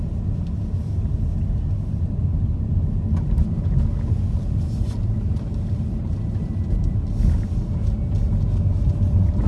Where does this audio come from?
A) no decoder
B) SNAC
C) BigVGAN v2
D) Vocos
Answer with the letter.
A